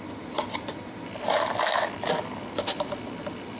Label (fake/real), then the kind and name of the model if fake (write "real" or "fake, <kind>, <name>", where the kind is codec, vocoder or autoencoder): real